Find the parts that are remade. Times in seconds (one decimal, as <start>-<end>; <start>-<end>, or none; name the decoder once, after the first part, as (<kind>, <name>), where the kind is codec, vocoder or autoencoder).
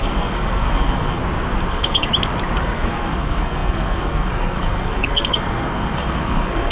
0.0-1.2 (codec, SNAC); 1.7-2.1; 2.6-6.7